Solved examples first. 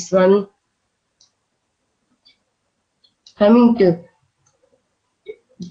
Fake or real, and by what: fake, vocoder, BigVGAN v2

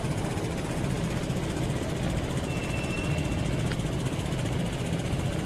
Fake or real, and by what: real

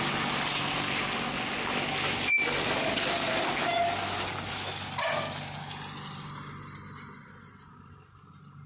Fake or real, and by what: real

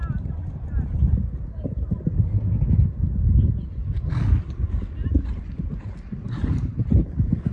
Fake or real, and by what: real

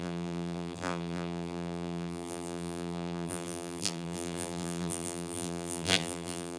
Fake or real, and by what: fake, vocoder, BigVGAN v2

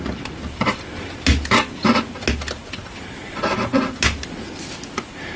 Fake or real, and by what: real